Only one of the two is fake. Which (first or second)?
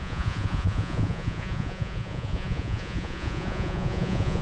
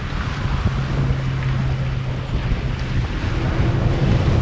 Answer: first